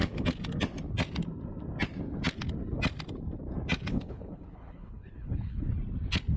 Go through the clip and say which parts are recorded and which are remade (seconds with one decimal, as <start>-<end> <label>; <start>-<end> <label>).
0.0-3.9 recorded; 3.9-5.7 remade; 5.7-6.4 recorded